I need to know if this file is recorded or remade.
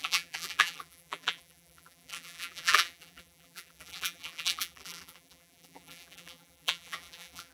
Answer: remade